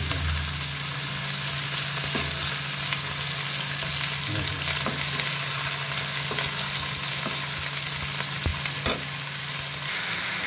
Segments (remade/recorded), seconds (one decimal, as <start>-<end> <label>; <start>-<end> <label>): 0.0-10.5 recorded